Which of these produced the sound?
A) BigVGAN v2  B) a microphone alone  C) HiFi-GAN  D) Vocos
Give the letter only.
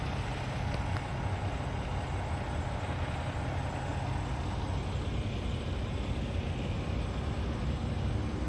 B